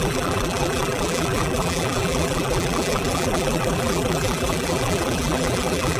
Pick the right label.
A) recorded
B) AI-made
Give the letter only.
B